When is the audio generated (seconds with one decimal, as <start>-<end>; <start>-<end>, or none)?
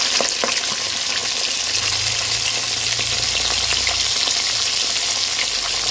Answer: none